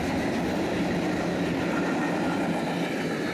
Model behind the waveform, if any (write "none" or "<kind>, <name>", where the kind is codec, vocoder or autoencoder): none